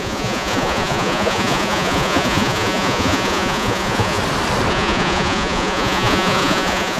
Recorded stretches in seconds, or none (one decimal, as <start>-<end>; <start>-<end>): 4.2-4.7